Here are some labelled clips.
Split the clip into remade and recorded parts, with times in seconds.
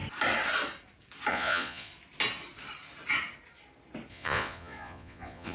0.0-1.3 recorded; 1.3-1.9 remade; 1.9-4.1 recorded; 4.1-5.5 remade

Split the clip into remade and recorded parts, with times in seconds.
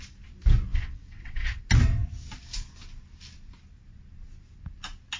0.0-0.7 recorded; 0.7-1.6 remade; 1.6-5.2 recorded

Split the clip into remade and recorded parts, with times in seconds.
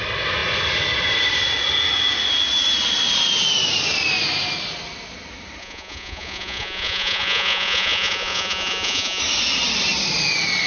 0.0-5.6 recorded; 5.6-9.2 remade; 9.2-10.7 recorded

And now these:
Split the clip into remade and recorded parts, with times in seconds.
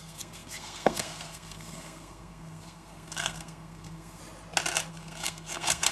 0.0-4.2 remade; 4.2-4.9 recorded; 4.9-5.9 remade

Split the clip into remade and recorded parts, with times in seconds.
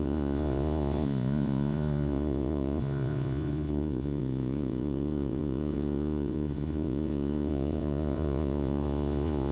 0.0-9.5 remade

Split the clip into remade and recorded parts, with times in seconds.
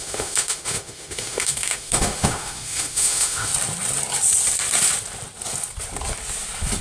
0.0-3.5 remade; 3.5-6.8 recorded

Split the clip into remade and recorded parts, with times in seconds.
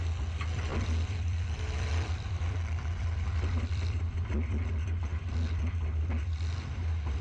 0.0-0.7 recorded; 0.7-4.3 remade; 4.3-7.2 recorded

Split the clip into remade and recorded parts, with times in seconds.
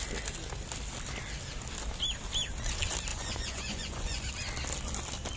0.0-3.1 recorded; 3.1-4.3 remade; 4.3-5.4 recorded